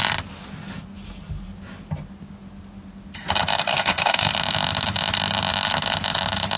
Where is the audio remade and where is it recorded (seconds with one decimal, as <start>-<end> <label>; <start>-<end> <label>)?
0.0-3.7 recorded; 3.7-4.3 remade; 4.3-6.6 recorded